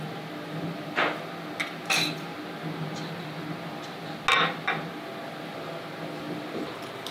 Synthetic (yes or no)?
no